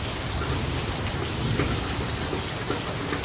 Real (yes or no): yes